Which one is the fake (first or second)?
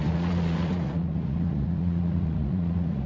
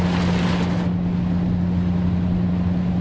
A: first